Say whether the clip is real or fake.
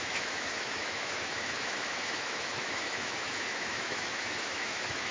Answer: fake